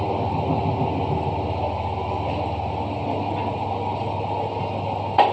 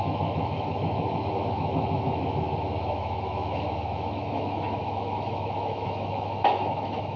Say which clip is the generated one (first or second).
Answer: second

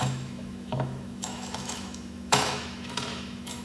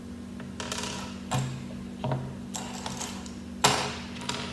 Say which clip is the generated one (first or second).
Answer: first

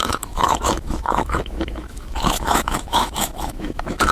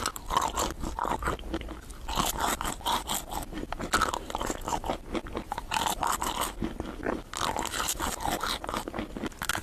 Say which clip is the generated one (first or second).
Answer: first